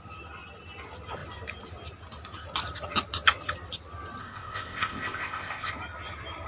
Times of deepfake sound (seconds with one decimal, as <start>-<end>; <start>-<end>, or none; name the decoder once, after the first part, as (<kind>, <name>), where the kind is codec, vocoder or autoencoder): 4.2-5.7 (codec, ZipCodec)